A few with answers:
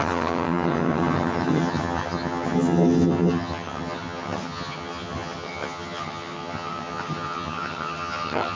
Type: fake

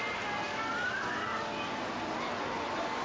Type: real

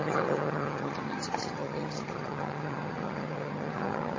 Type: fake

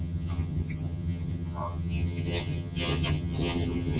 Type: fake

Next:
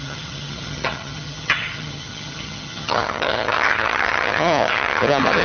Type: fake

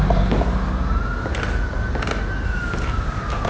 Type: real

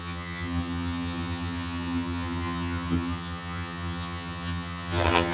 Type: fake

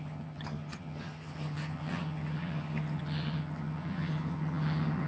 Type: fake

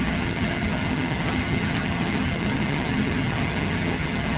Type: fake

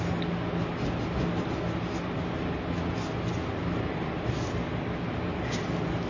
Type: real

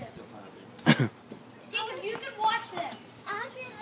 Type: real